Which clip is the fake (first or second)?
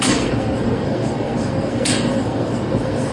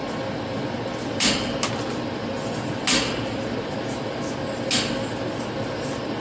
first